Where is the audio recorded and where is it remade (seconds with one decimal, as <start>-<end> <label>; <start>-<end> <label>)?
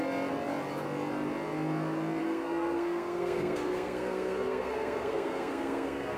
0.0-2.2 recorded; 2.2-6.2 remade